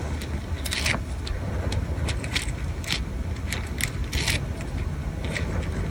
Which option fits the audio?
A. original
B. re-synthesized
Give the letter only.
A